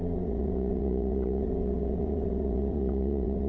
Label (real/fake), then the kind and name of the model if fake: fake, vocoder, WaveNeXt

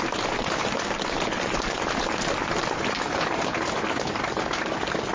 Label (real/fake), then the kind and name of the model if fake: real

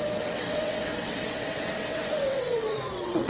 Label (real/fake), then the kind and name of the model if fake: fake, vocoder, WaveNeXt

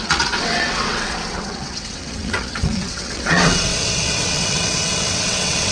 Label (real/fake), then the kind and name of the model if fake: fake, vocoder, WaveNeXt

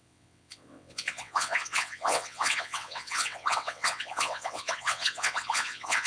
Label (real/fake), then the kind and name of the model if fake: fake, vocoder, WaveNeXt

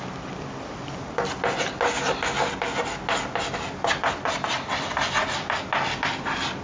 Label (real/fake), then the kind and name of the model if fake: real